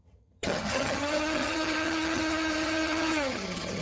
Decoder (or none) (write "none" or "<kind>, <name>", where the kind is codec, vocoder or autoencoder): vocoder, HiFi-GAN